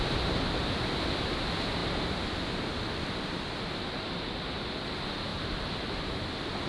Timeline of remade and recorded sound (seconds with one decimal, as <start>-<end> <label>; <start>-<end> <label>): 0.0-5.3 recorded; 5.3-6.3 remade; 6.3-6.7 recorded